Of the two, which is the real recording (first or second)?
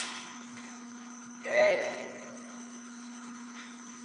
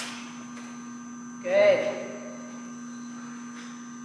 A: second